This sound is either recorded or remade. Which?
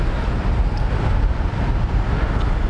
recorded